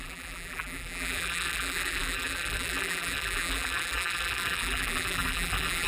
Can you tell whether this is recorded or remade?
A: remade